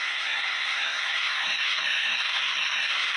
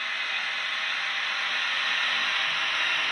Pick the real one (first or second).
second